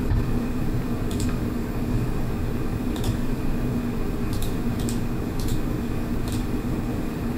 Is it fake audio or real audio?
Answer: fake